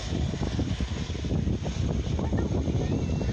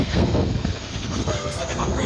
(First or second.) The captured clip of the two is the first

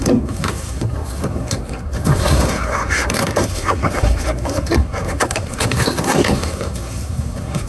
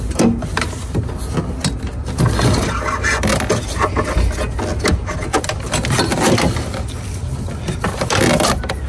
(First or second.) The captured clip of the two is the second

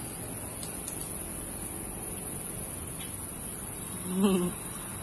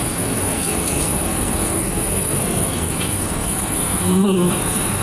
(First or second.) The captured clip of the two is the first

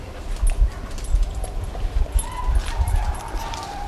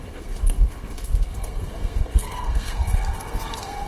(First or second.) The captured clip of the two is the first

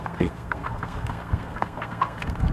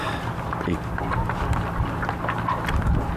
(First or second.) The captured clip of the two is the second